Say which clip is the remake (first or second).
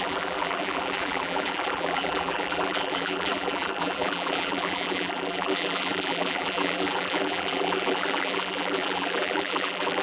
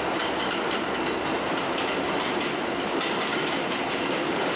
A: first